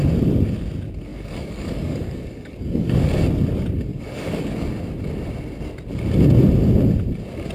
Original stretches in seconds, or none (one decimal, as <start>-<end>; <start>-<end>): 0.0-1.1; 3.1-3.9; 4.5-7.5

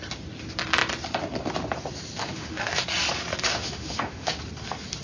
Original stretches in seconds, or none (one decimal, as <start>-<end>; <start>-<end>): 0.0-2.2; 2.8-3.5; 4.3-5.0

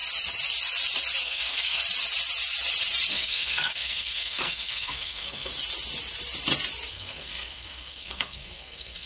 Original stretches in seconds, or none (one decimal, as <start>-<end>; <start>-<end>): 0.0-1.2; 1.8-3.1; 5.5-6.9